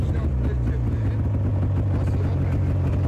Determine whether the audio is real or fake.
real